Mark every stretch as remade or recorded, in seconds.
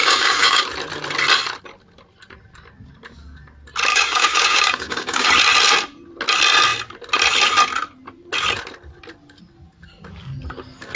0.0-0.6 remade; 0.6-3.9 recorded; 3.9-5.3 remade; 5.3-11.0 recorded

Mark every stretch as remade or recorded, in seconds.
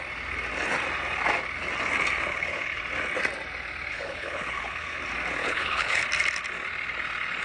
0.0-2.3 recorded; 2.3-2.8 remade; 2.8-3.9 recorded; 3.9-5.0 remade; 5.0-5.4 recorded; 5.4-6.0 remade; 6.0-7.4 recorded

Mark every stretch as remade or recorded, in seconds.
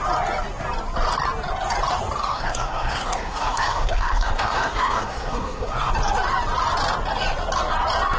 0.0-2.2 recorded; 2.2-5.9 remade; 5.9-8.2 recorded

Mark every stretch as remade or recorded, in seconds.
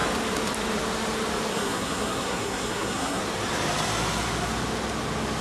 0.0-1.5 recorded; 1.5-3.2 remade; 3.2-5.4 recorded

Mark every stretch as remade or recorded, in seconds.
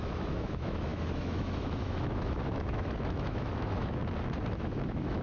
0.0-4.0 remade; 4.0-4.6 recorded; 4.6-5.2 remade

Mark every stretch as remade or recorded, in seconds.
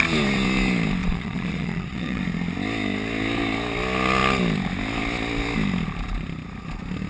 0.0-1.0 recorded; 1.0-2.2 remade; 2.2-7.1 recorded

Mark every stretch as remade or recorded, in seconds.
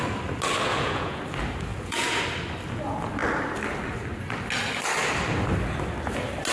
0.0-0.7 recorded; 0.7-1.2 remade; 1.2-1.7 recorded; 1.7-2.2 remade; 2.2-6.5 recorded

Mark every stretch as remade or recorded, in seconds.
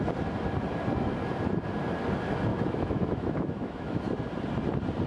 0.0-2.5 recorded; 2.5-4.1 remade; 4.1-5.1 recorded